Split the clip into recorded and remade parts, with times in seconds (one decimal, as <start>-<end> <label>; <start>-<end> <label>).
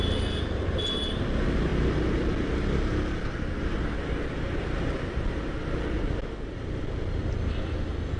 0.0-8.2 recorded